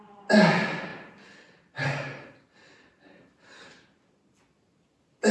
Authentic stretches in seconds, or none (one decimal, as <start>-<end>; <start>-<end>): 0.0-5.3